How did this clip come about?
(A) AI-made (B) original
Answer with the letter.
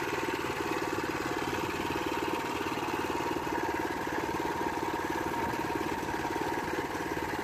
B